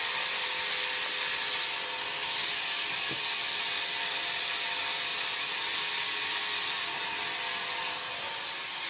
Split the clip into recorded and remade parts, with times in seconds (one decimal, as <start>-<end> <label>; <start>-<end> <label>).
0.0-8.9 recorded